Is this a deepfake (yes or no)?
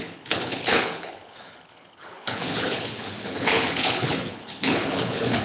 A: yes